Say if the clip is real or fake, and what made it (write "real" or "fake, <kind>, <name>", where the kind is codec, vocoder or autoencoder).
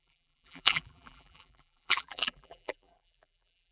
fake, vocoder, BigVGAN v2